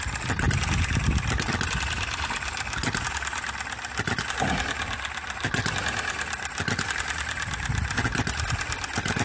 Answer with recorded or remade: recorded